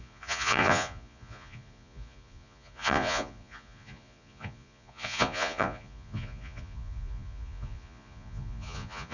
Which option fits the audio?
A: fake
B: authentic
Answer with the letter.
A